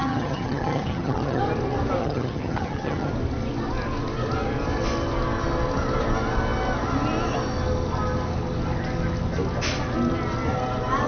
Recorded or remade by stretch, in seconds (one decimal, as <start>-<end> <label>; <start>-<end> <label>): 0.0-1.4 remade; 1.4-2.0 recorded; 2.0-3.1 remade; 3.1-11.1 recorded